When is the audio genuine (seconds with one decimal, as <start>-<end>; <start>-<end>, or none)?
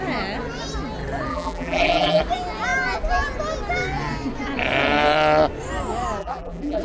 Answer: 0.0-1.3; 2.2-6.2